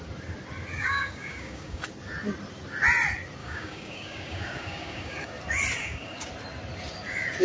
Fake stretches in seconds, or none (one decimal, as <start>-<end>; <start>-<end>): 0.8-1.8; 3.4-5.3; 5.8-6.3